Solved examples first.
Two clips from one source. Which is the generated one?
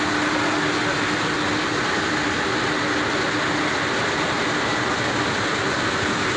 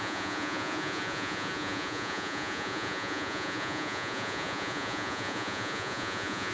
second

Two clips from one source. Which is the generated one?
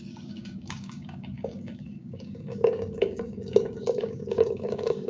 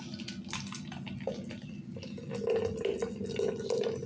first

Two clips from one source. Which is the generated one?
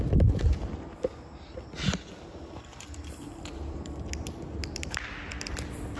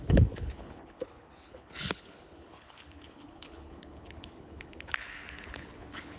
second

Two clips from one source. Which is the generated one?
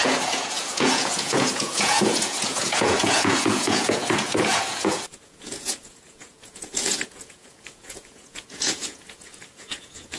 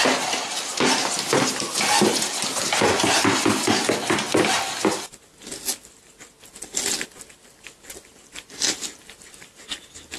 first